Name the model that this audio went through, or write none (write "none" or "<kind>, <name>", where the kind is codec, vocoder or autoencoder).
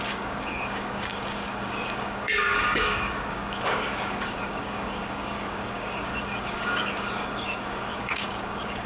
codec, DAC